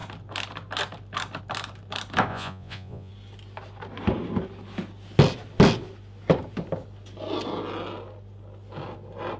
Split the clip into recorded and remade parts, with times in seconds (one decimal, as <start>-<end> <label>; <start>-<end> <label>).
0.0-2.3 recorded; 2.3-3.1 remade; 3.1-9.4 recorded